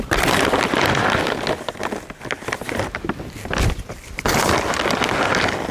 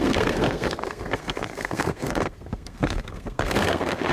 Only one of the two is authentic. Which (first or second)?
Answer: first